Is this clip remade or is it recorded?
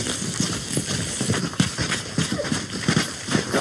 recorded